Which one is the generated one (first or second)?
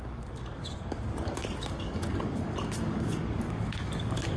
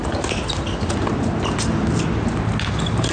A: first